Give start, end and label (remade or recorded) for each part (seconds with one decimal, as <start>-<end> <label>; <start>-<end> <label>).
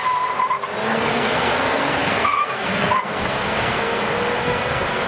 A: 0.0-0.9 recorded; 0.9-4.0 remade; 4.0-4.4 recorded; 4.4-5.1 remade